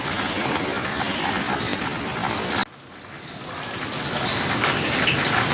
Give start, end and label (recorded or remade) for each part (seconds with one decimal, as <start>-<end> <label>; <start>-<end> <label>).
0.0-5.5 recorded

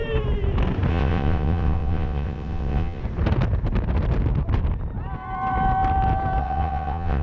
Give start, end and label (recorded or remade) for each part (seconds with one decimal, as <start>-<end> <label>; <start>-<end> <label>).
0.0-0.9 recorded; 0.9-3.0 remade; 3.0-6.4 recorded; 6.4-7.2 remade

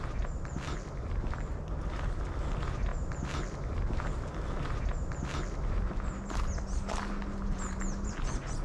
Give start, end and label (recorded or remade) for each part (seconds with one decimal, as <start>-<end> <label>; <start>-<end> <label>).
0.0-8.6 recorded